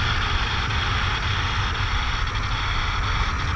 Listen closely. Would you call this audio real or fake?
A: real